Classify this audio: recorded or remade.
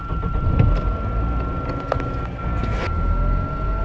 recorded